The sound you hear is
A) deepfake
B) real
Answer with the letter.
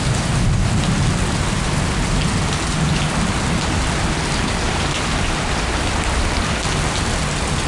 B